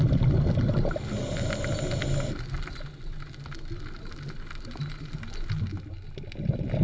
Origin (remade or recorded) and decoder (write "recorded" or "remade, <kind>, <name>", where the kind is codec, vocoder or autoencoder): recorded